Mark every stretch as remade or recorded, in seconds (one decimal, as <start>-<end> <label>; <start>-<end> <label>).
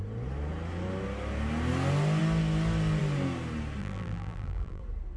0.0-3.8 recorded; 3.8-4.8 remade; 4.8-5.2 recorded